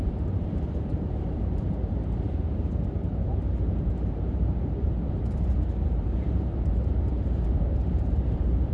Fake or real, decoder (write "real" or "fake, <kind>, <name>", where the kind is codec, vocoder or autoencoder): fake, vocoder, BigVGAN v2